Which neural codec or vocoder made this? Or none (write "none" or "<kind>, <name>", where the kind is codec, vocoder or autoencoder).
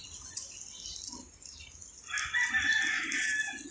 none